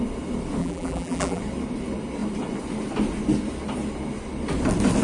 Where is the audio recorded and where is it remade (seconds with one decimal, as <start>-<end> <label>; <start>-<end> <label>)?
0.0-0.6 recorded; 0.6-1.4 remade; 1.4-5.0 recorded

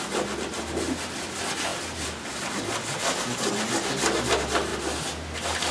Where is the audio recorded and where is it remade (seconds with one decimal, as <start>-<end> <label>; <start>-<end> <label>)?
0.0-4.7 recorded; 4.7-5.7 remade

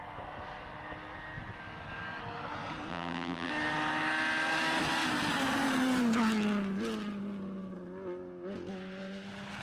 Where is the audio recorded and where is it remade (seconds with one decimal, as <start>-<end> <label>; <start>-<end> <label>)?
0.0-2.9 recorded; 2.9-3.5 remade; 3.5-9.6 recorded

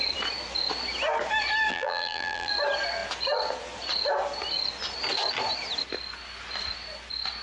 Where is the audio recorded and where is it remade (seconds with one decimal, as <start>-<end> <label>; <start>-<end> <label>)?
0.0-1.7 recorded; 1.7-2.5 remade; 2.5-7.4 recorded

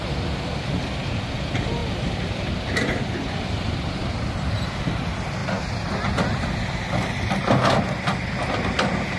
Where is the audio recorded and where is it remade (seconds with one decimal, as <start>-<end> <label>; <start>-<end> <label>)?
0.0-1.8 recorded; 1.8-4.5 remade; 4.5-9.2 recorded

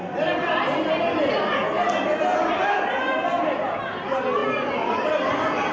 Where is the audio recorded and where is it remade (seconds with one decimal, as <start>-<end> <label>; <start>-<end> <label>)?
0.0-5.7 recorded

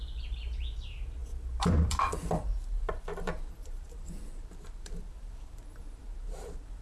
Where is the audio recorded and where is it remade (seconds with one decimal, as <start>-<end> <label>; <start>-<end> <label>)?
0.0-6.8 remade

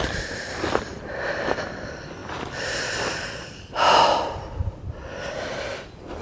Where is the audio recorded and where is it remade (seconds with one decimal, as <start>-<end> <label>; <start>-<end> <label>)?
0.0-2.2 remade; 2.2-3.3 recorded; 3.3-4.6 remade; 4.6-5.7 recorded; 5.7-6.2 remade